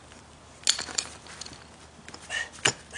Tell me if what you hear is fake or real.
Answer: real